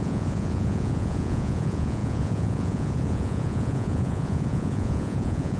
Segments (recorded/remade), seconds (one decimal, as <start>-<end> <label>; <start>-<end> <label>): 0.0-5.6 remade